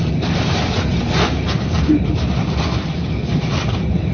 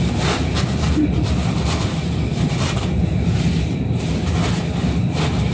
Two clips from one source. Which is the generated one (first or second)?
second